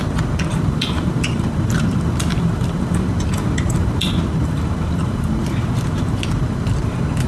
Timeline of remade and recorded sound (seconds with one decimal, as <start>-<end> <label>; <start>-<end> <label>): 0.0-0.5 recorded; 0.5-3.1 remade; 3.1-3.8 recorded; 3.8-6.2 remade; 6.2-7.3 recorded